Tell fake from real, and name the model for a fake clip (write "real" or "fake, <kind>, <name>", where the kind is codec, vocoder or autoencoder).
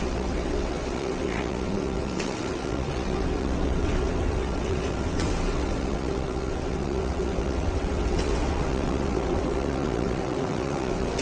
fake, vocoder, WaveNeXt